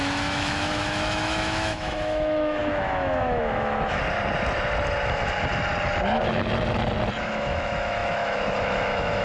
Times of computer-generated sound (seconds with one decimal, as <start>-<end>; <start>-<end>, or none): 0.0-4.0; 7.2-9.2